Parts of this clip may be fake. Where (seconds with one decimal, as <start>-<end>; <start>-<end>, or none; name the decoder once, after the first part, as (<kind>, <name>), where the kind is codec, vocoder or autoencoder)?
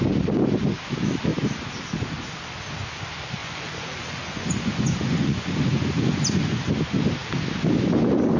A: 3.4-6.7 (vocoder, Vocos)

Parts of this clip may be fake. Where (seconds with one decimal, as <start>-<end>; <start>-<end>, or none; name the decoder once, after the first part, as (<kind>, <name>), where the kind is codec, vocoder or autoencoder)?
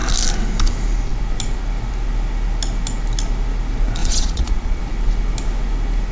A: 4.0-4.8 (vocoder, Vocos)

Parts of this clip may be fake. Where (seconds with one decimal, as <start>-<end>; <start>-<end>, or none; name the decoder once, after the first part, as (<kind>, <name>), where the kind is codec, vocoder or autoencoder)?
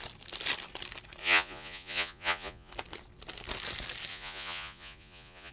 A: 1.2-2.7 (vocoder, Vocos); 4.1-5.5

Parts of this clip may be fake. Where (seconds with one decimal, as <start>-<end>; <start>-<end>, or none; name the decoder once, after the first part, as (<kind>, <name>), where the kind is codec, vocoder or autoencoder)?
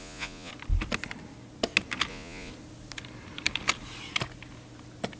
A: 0.0-0.5 (vocoder, Vocos); 2.1-2.5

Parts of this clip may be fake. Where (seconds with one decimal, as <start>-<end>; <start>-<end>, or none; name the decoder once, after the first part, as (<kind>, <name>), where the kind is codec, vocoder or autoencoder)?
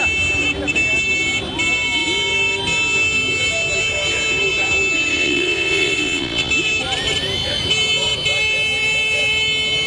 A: 5.1-6.5 (vocoder, Vocos)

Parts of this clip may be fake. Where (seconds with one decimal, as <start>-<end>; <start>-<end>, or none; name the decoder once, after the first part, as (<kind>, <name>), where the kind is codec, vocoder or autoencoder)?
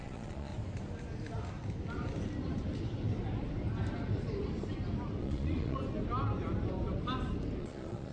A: 0.0-0.5 (vocoder, Vocos); 5.2-5.8; 7.6-8.1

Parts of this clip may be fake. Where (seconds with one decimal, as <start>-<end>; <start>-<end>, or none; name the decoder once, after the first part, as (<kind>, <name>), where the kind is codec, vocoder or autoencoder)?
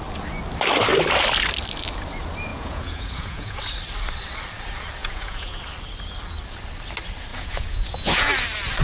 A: 2.5-3.6 (vocoder, Vocos); 5.0-5.6; 7.3-8.3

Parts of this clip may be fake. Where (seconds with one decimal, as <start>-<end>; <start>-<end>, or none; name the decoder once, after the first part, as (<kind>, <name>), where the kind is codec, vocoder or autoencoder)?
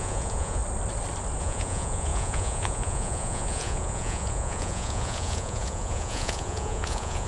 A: 0.0-0.6 (vocoder, Vocos); 1.4-7.3